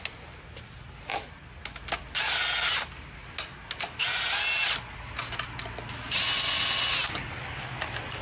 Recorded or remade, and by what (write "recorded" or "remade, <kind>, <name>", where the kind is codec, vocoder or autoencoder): recorded